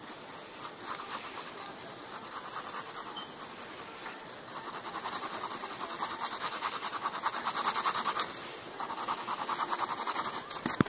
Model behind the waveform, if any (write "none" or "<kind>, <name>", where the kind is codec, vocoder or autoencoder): none